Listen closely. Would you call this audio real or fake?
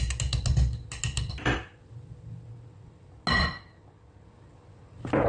real